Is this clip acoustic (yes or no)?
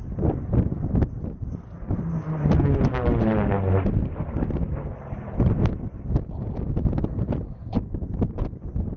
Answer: yes